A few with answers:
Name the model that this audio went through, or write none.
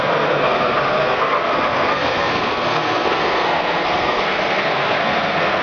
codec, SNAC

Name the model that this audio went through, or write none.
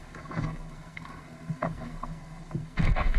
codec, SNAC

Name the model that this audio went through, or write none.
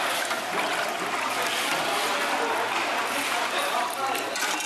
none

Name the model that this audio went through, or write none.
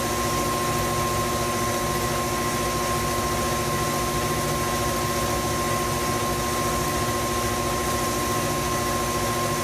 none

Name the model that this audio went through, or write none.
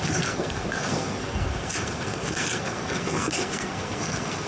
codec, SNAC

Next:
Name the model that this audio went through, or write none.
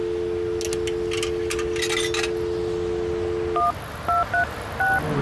none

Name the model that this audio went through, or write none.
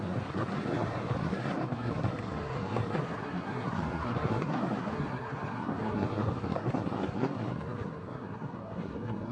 codec, SNAC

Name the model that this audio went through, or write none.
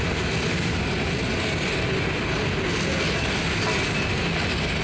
none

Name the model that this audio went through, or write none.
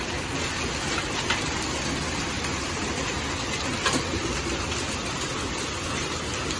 none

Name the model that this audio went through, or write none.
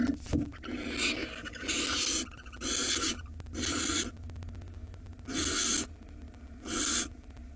none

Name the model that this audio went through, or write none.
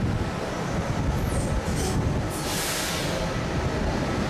none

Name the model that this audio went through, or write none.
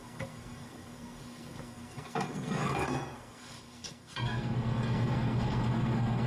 codec, SNAC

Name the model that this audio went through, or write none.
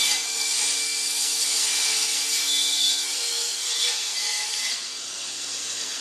codec, SNAC